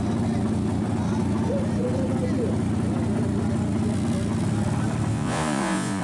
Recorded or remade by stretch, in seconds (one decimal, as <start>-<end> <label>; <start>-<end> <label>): 0.0-5.1 recorded; 5.1-6.0 remade